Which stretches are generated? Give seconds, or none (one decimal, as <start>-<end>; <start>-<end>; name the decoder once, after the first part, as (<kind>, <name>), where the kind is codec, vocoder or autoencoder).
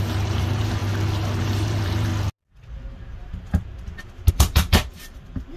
0.0-0.8 (vocoder, BigVGAN v2); 1.4-2.1; 4.3-5.6